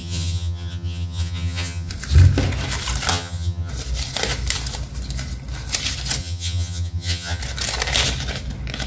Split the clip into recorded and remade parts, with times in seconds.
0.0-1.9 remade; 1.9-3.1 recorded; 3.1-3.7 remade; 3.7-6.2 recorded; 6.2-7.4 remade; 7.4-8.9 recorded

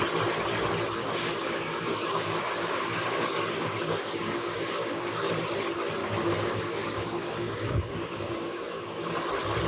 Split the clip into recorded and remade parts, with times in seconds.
0.0-1.0 recorded; 1.0-5.3 remade; 5.3-6.0 recorded; 6.0-9.1 remade; 9.1-9.7 recorded

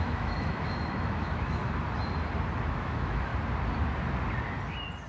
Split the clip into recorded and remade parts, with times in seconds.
0.0-1.6 remade; 1.6-2.6 recorded; 2.6-3.3 remade; 3.3-5.1 recorded

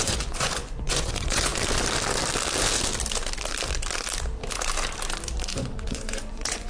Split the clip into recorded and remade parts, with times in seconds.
0.0-1.5 remade; 1.5-5.5 recorded; 5.5-6.7 remade

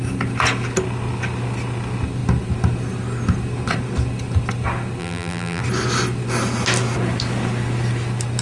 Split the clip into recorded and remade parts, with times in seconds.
0.0-5.0 recorded; 5.0-5.6 remade; 5.6-8.4 recorded

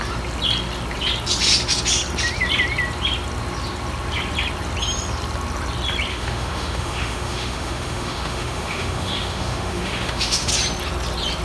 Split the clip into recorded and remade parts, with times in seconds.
0.0-6.1 recorded; 6.1-10.5 remade; 10.5-11.4 recorded

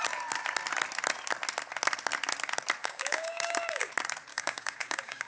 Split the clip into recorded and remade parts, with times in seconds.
0.0-2.8 recorded; 2.8-3.9 remade; 3.9-4.3 recorded; 4.3-5.3 remade

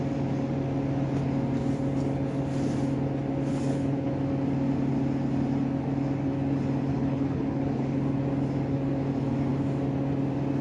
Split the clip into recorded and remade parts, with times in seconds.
0.0-3.5 recorded; 3.5-4.1 remade; 4.1-6.9 recorded; 6.9-8.0 remade; 8.0-10.6 recorded